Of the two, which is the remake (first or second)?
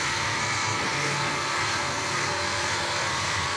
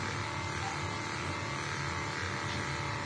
first